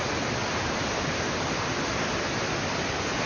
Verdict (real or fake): real